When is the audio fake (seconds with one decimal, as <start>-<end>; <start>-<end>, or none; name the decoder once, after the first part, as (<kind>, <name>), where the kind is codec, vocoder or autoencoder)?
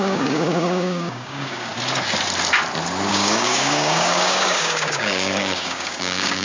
0.0-1.7 (codec, DAC); 3.1-6.4